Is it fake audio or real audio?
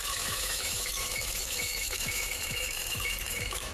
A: fake